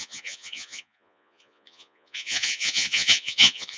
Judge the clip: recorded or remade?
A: remade